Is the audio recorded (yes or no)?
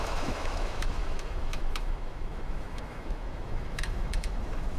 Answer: no